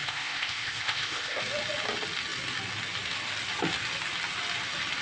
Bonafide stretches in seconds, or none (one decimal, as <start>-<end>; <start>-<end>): 1.4-5.0